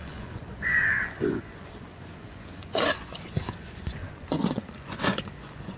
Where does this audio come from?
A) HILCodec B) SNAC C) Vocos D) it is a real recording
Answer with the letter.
C